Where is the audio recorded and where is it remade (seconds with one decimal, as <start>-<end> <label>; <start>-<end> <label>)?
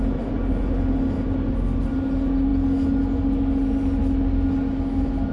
0.0-5.3 recorded